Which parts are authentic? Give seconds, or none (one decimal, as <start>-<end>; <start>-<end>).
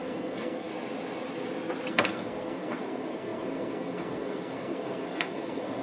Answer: 0.7-1.9